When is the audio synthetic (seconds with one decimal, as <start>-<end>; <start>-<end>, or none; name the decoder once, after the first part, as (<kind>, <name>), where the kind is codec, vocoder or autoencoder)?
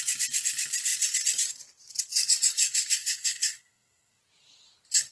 2.6-4.2 (codec, SNAC)